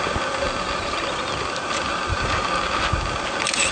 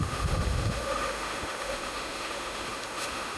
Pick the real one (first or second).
first